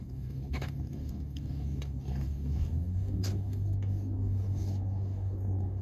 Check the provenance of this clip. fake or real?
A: fake